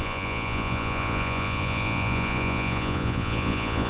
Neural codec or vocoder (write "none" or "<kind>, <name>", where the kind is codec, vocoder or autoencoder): vocoder, Vocos